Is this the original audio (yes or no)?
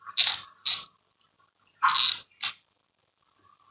yes